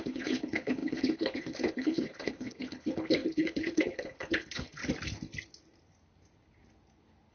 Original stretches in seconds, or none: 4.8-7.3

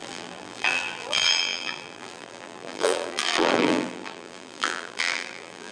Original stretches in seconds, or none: none